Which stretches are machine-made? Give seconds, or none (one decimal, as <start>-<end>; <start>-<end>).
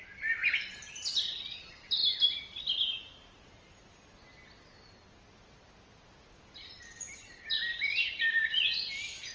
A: none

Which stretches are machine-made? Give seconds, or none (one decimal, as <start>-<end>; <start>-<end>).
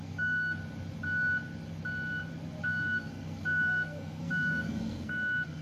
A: 0.0-0.6; 2.6-5.6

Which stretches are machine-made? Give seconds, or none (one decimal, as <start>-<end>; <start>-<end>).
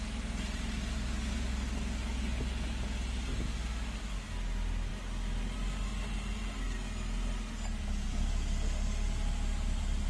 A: none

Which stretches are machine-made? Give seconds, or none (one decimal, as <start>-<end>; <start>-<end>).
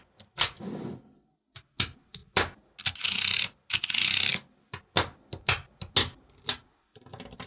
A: none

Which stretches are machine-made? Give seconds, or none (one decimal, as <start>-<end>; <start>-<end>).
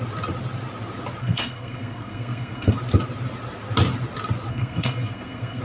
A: 1.2-2.7; 4.5-5.6